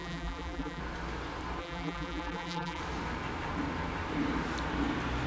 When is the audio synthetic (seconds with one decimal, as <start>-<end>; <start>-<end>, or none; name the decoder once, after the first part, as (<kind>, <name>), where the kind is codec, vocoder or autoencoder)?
0.0-0.8 (vocoder, BigVGAN v2); 1.6-2.8